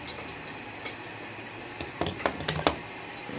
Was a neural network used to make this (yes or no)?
yes